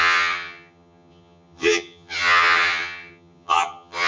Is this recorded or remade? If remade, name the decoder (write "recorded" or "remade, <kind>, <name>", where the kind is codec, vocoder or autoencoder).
remade, vocoder, HiFi-GAN